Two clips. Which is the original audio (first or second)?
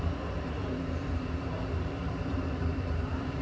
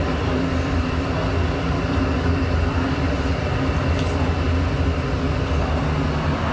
second